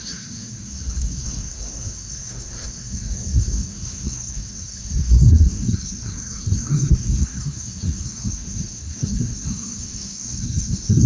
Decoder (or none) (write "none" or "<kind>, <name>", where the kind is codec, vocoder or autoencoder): codec, SNAC